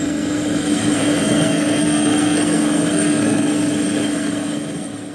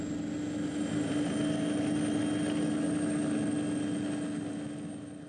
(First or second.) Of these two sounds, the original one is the second